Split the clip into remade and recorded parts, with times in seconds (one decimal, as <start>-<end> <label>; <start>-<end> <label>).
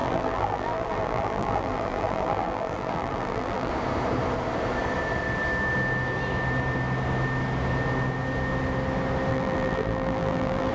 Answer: 0.0-3.7 remade; 3.7-9.3 recorded; 9.3-10.7 remade